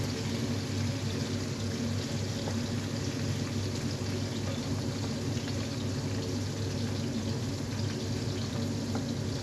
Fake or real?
real